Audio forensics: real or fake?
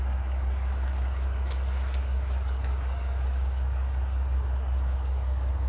fake